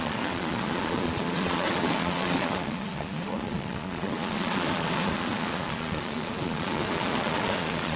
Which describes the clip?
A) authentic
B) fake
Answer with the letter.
B